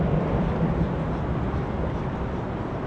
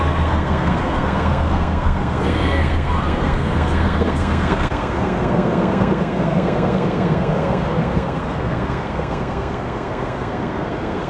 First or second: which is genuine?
first